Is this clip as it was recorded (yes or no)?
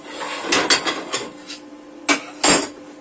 yes